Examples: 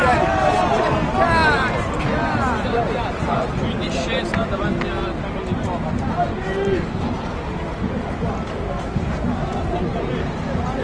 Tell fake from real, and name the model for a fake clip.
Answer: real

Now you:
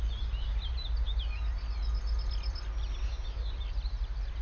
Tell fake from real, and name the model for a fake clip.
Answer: real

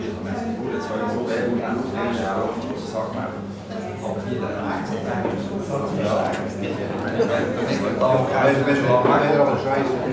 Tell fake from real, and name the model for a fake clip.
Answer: real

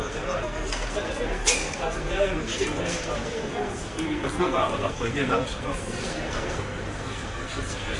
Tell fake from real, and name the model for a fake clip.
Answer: fake, codec, SNAC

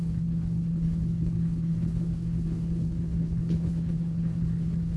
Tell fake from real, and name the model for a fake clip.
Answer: fake, codec, HILCodec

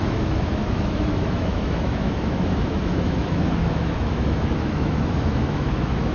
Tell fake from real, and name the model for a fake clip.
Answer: fake, autoencoder, DAC-VAE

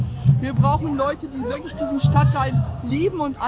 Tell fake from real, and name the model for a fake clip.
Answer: fake, codec, DAC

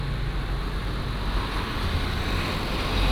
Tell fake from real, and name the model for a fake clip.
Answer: real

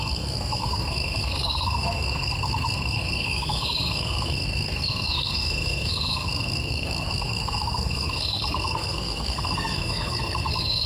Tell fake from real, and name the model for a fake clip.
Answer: fake, codec, SNAC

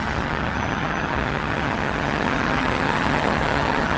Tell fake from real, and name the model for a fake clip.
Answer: fake, vocoder, HiFi-GAN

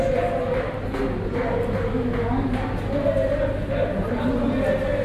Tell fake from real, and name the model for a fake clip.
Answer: real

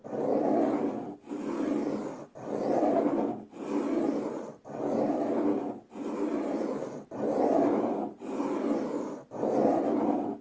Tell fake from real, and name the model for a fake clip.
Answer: real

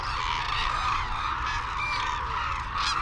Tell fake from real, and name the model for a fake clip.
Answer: real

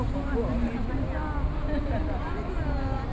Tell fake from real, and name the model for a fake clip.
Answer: real